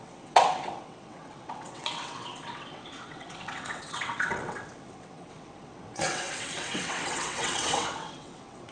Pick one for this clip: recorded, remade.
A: remade